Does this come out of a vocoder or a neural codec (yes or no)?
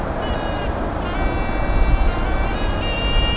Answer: no